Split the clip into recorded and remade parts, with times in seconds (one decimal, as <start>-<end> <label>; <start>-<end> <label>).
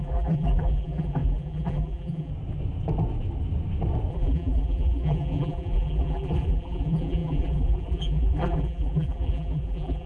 0.0-2.3 remade; 2.3-4.1 recorded; 4.1-10.1 remade